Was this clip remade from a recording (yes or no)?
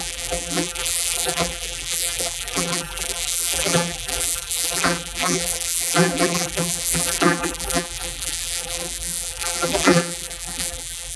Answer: yes